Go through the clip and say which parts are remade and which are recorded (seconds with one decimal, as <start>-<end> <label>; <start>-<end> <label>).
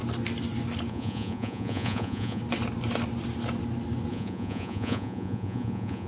0.0-0.9 recorded; 0.9-2.4 remade; 2.4-4.1 recorded; 4.1-6.1 remade